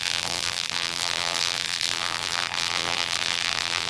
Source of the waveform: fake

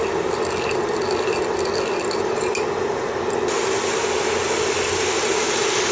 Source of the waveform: real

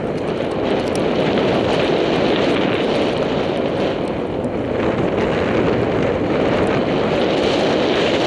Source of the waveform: real